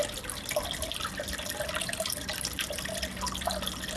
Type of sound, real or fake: real